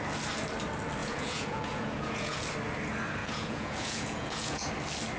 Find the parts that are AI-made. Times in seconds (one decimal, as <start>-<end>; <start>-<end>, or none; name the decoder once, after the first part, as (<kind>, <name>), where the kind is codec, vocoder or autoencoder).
1.0-2.4 (vocoder, Vocos); 3.2-4.7